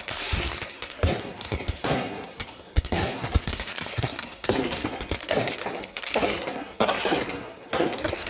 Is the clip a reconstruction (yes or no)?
yes